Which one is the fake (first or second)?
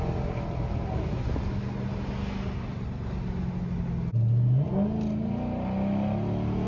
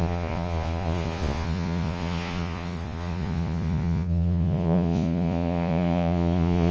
second